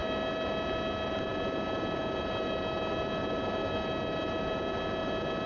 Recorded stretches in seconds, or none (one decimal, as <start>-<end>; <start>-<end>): 0.0-5.5